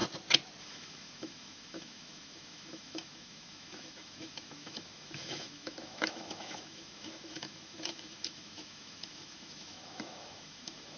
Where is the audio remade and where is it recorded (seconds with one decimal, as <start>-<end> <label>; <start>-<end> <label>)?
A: 0.0-0.6 recorded; 0.6-11.0 remade